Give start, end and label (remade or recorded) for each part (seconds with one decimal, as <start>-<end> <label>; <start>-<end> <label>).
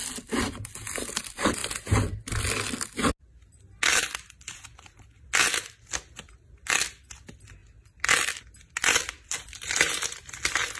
0.0-10.8 recorded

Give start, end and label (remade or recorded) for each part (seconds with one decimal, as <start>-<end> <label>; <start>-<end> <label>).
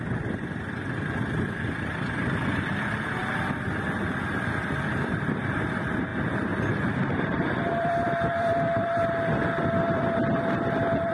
0.0-6.1 remade; 6.1-6.7 recorded; 6.7-11.1 remade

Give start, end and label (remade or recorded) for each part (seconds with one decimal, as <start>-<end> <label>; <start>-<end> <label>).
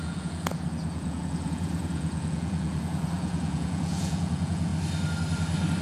0.0-4.7 remade; 4.7-5.8 recorded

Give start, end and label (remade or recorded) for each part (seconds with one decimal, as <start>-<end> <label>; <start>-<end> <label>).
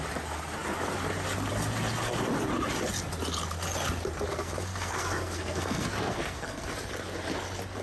0.0-4.3 recorded; 4.3-6.7 remade; 6.7-7.8 recorded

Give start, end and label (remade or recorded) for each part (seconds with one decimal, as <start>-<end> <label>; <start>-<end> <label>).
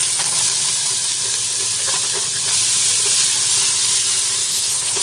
0.0-4.4 recorded; 4.4-5.0 remade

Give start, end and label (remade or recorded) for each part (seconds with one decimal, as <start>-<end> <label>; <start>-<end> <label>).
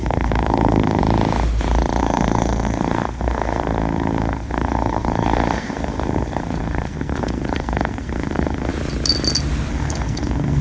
0.0-1.0 remade; 1.0-2.0 recorded; 2.0-8.7 remade; 8.7-9.7 recorded; 9.7-10.6 remade